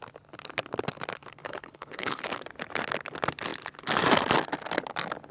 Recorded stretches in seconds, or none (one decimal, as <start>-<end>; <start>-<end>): 0.0-1.4; 2.2-5.3